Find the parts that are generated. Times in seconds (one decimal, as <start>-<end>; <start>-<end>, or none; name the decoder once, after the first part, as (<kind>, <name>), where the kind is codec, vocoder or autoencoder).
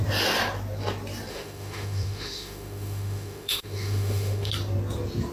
1.3-4.5 (autoencoder, DAC-VAE)